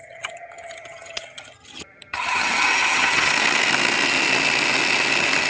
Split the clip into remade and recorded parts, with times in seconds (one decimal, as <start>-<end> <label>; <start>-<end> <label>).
0.0-3.3 remade; 3.3-5.5 recorded